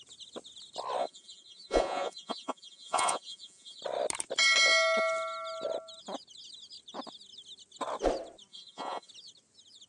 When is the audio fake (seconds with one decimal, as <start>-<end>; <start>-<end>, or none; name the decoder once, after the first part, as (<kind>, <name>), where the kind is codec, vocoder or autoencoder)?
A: 1.0-3.8 (vocoder, Vocos); 8.5-9.1